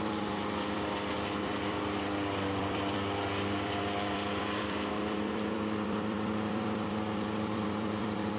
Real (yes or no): no